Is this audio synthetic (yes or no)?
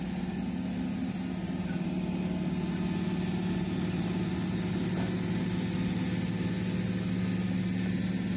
no